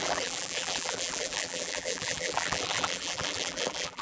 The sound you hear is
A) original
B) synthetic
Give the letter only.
B